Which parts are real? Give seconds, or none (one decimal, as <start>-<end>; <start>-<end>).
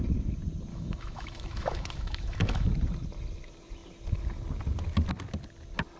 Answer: 0.0-0.7; 2.7-6.0